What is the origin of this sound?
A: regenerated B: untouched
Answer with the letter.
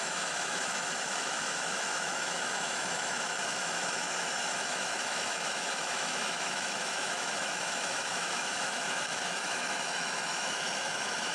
A